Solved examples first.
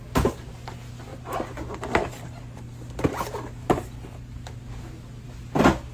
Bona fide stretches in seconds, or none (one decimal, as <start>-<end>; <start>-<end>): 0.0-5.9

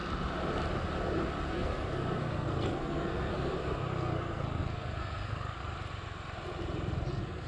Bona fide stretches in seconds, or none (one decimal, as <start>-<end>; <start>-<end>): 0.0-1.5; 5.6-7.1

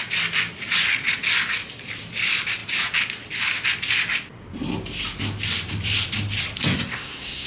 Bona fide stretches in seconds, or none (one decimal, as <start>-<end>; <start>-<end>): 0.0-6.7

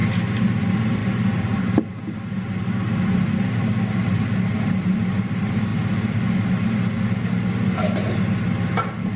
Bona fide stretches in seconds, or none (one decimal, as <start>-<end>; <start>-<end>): 0.0-9.2